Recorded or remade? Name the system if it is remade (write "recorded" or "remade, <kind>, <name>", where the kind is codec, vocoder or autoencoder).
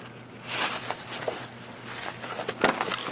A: recorded